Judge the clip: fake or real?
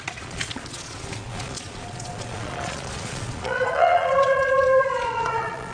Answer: fake